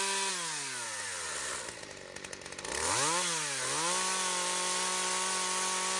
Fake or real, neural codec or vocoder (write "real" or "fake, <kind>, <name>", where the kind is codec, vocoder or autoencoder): real